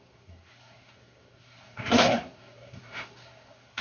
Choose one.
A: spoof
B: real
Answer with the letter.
A